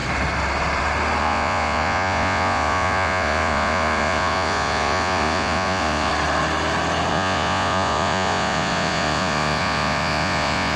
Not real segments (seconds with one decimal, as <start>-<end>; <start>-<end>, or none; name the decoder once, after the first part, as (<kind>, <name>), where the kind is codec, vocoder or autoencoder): 1.2-6.1 (vocoder, Vocos); 7.1-10.8